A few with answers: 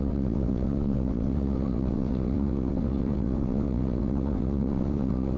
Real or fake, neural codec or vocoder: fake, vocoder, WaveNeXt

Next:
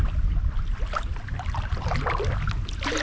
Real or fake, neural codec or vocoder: real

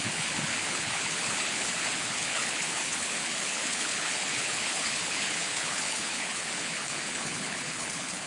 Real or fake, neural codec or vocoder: fake, codec, HILCodec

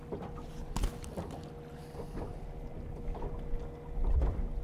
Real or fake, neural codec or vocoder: real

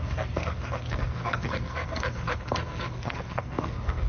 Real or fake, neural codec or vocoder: fake, codec, SNAC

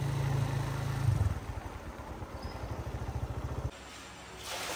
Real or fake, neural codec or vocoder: real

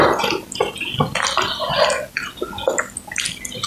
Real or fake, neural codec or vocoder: real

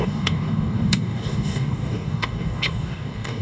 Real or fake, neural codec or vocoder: fake, codec, DAC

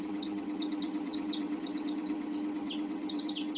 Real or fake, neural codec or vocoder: fake, vocoder, WaveNeXt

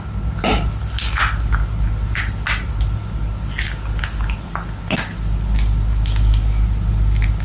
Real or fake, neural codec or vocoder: real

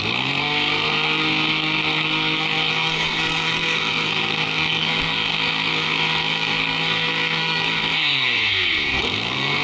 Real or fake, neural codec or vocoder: fake, codec, SNAC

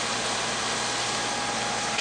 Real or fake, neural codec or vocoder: real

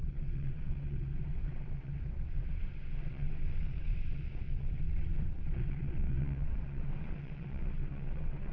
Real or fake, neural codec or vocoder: fake, vocoder, WaveNeXt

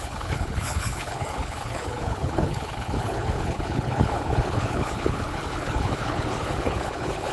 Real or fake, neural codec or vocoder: fake, codec, HILCodec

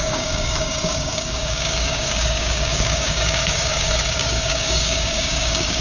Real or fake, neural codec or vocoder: fake, codec, DAC